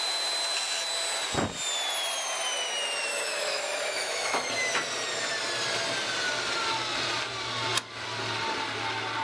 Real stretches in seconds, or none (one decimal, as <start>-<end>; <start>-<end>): 0.0-3.1; 4.5-9.2